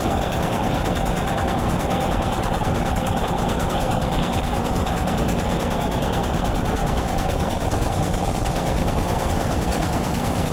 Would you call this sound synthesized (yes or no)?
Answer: yes